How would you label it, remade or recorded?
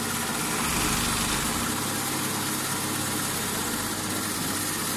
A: recorded